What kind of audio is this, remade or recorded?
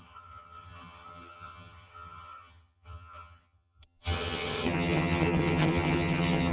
remade